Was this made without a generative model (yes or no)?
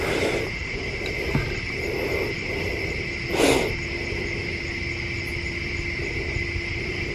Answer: yes